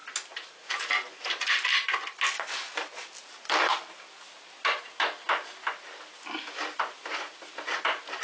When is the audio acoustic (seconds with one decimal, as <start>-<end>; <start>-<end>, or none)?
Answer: 0.0-8.2